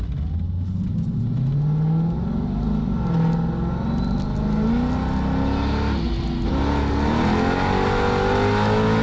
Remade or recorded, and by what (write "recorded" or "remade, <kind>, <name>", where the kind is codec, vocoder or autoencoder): recorded